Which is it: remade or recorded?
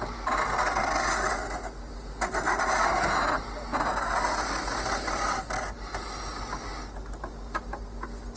recorded